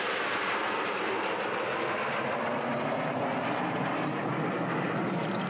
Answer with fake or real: real